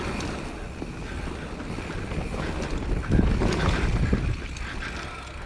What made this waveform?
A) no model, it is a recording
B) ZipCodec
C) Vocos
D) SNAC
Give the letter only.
A